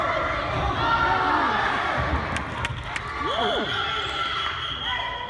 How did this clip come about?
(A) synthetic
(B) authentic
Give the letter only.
B